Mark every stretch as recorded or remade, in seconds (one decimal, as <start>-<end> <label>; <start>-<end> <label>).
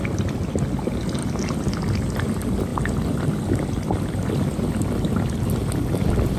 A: 0.0-6.4 recorded